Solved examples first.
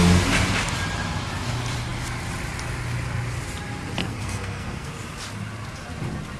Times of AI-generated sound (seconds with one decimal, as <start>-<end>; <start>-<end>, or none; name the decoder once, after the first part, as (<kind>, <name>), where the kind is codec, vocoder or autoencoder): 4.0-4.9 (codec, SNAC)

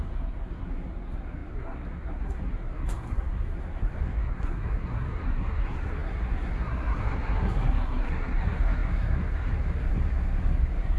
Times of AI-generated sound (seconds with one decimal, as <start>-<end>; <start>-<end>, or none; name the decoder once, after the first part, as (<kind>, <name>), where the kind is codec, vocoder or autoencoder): 0.0-11.0 (codec, SNAC)

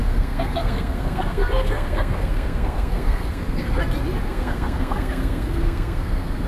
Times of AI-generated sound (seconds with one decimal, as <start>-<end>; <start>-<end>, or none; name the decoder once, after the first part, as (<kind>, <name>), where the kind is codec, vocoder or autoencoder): 0.0-3.8 (codec, SNAC); 4.3-6.5

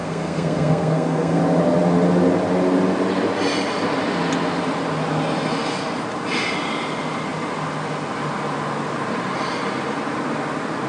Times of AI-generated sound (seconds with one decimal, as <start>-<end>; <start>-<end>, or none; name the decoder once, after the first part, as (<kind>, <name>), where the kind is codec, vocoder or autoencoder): 0.0-1.4 (codec, SNAC)

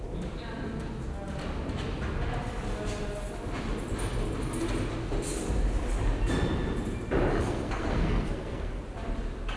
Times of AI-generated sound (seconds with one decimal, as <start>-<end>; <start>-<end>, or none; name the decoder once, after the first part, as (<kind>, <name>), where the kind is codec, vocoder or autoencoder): 7.3-8.8 (codec, SNAC)

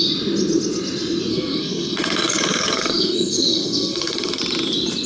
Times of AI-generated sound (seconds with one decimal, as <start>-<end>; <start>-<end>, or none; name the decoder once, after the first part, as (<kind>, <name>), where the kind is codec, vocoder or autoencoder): 1.3-4.4 (codec, SNAC)

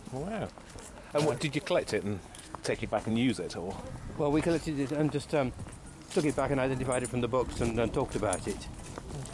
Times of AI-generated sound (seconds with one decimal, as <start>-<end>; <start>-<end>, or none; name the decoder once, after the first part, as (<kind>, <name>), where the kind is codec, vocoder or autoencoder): 2.4-3.1 (codec, SNAC)